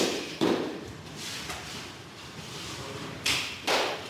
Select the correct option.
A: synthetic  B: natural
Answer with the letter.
A